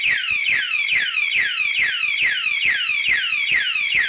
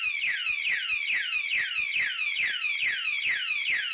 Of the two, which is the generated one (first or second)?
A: first